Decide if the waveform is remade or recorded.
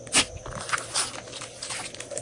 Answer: recorded